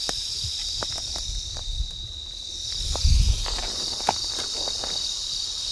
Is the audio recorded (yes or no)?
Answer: yes